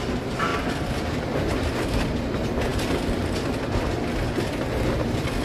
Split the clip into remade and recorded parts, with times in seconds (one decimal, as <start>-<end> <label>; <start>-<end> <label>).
0.0-5.4 recorded